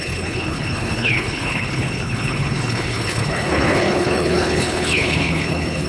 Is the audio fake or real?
fake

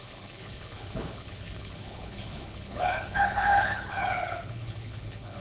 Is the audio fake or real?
fake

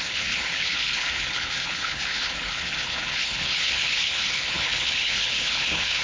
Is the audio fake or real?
fake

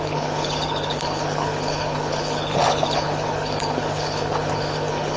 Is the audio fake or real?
fake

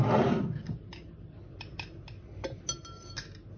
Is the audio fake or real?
real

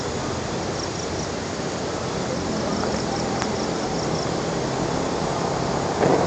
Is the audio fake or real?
real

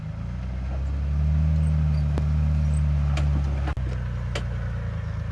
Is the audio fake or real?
real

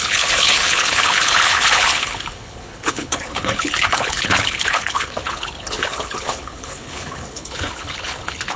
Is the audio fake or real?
fake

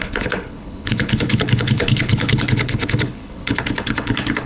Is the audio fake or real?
fake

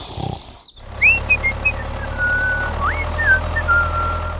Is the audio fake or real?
real